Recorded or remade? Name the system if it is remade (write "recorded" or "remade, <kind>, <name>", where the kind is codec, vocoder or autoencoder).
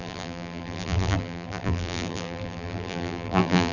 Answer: remade, vocoder, BigVGAN v2